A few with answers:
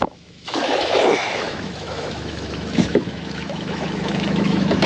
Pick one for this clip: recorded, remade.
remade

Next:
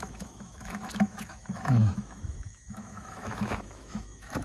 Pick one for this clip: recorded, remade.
remade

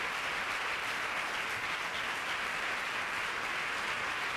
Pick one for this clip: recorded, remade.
recorded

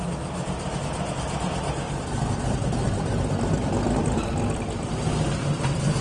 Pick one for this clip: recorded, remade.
recorded